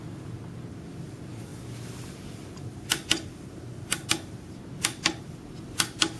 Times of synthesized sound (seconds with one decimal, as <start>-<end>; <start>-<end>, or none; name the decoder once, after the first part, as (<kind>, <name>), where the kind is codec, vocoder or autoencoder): none